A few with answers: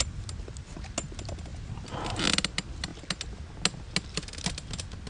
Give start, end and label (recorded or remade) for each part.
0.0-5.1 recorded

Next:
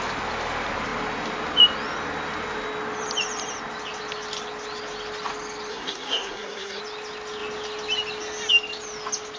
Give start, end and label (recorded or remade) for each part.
0.0-5.7 recorded; 5.7-6.8 remade; 6.8-9.4 recorded

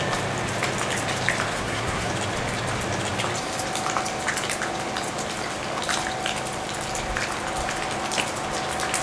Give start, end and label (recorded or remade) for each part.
0.0-1.5 recorded; 1.5-2.1 remade; 2.1-9.0 recorded

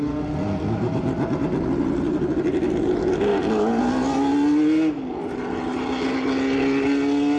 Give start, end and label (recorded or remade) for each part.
0.0-7.4 recorded

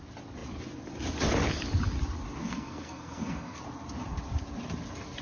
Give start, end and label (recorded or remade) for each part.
0.0-2.4 recorded; 2.4-3.6 remade; 3.6-5.2 recorded

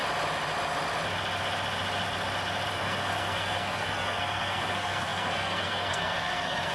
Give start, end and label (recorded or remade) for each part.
0.0-2.7 recorded; 2.7-6.7 remade